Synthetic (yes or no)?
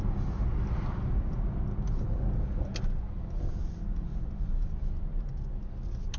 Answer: no